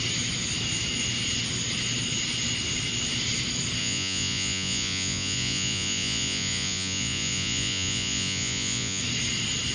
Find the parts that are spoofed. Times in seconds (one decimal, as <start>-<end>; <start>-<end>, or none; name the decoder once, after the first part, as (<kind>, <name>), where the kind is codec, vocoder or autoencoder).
3.8-9.0 (vocoder, Vocos)